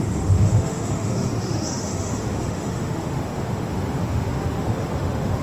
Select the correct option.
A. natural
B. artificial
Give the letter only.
B